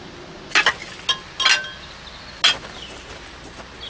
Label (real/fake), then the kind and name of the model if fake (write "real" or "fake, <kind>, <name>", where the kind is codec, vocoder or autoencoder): real